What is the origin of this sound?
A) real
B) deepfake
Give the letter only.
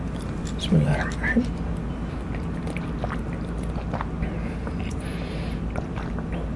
A